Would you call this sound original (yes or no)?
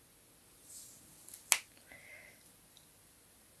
yes